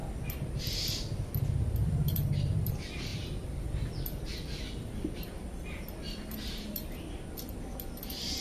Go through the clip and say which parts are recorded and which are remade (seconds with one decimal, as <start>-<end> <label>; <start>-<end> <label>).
0.0-1.8 recorded; 1.8-2.7 remade; 2.7-3.1 recorded; 3.1-7.0 remade; 7.0-8.4 recorded